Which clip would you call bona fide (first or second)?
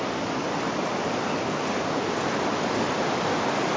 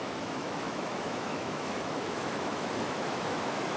first